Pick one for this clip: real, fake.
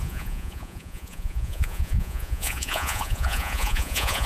fake